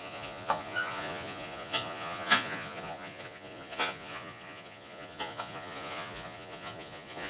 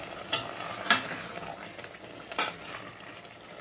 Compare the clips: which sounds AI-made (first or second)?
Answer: first